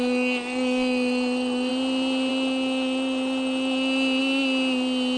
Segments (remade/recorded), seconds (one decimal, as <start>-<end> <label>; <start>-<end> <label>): 0.0-1.7 remade; 1.7-2.3 recorded; 2.3-4.2 remade; 4.2-5.2 recorded